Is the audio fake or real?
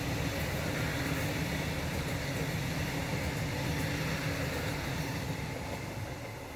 real